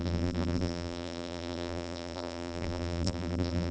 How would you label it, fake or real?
fake